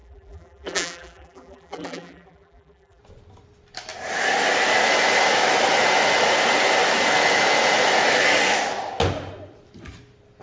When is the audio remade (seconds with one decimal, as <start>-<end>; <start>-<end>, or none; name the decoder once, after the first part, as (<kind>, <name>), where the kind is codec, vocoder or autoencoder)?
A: 0.0-3.0 (vocoder, BigVGAN v2)